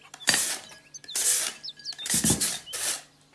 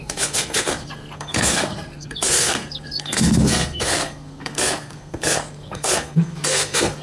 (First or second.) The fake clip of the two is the second